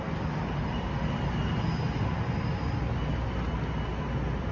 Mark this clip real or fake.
real